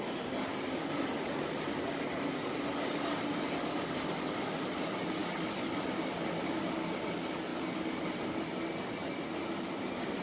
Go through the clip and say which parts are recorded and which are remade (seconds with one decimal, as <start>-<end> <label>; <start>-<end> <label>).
0.0-10.2 recorded